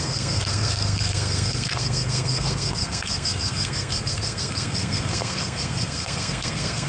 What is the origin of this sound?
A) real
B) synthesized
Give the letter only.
B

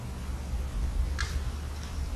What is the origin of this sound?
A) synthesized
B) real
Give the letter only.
B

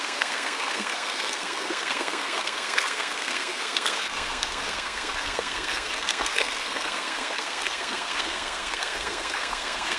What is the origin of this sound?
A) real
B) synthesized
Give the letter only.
B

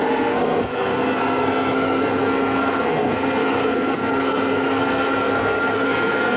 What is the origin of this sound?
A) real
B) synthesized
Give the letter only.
B